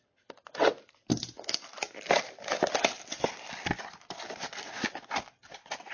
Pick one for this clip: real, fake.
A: real